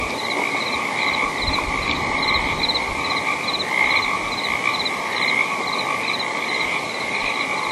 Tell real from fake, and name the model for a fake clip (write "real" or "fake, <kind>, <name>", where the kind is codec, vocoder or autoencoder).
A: real